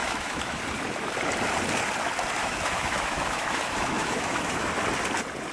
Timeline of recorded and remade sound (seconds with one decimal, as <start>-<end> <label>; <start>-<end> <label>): 0.0-0.6 remade; 0.6-2.4 recorded; 2.4-4.7 remade; 4.7-5.5 recorded